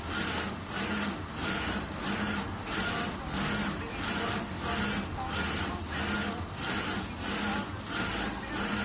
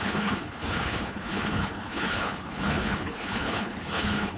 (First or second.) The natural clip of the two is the first